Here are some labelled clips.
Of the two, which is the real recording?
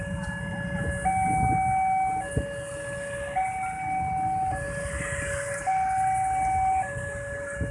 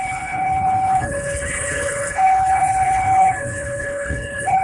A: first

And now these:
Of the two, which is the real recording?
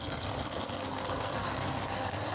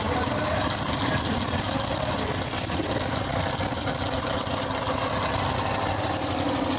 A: second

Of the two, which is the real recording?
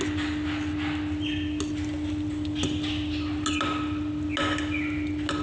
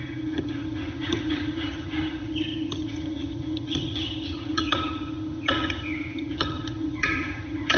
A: first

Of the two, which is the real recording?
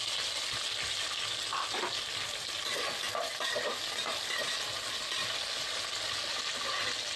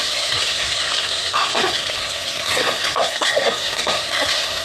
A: first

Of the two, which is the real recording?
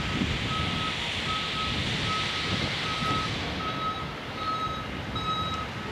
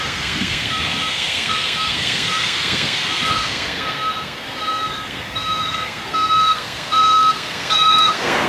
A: first